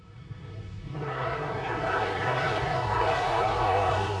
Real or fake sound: fake